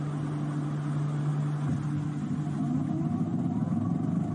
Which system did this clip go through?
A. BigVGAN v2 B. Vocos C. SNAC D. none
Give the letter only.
D